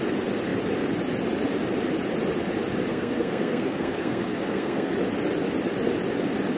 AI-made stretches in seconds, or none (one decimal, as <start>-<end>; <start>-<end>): 2.9-4.9